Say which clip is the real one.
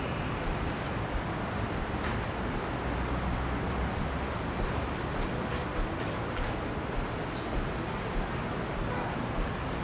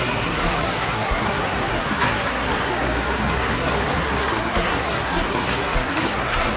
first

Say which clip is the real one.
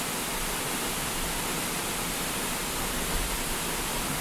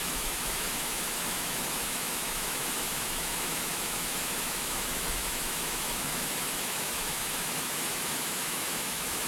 first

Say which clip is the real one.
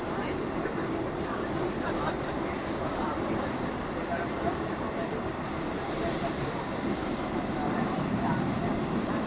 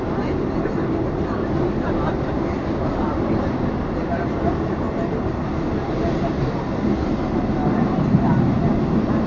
second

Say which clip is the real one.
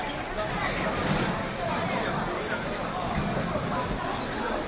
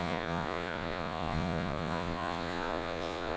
first